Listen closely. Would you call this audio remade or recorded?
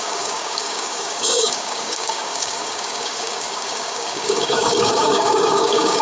remade